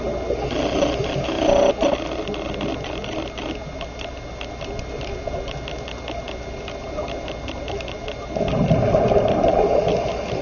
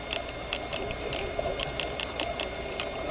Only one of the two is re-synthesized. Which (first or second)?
second